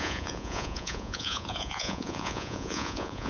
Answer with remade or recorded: remade